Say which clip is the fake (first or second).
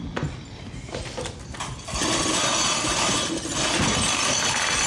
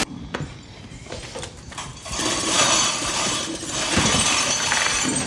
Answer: second